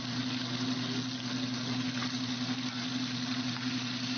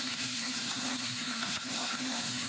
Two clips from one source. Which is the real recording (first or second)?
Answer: first